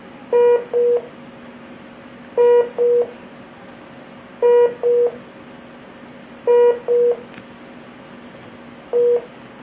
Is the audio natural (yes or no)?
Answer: yes